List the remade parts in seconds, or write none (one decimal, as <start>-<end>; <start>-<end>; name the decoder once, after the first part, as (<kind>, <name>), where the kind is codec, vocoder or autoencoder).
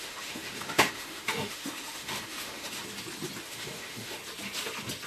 0.0-2.8 (autoencoder, DAC-VAE); 3.4-4.2